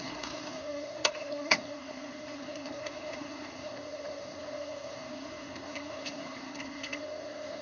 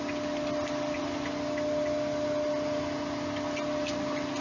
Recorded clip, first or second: second